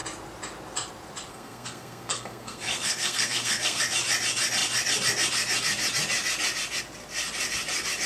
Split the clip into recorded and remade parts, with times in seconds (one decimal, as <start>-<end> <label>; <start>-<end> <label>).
0.0-1.3 recorded; 1.3-3.8 remade; 3.8-8.1 recorded